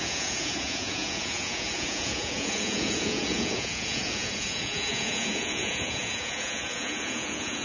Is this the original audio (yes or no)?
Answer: no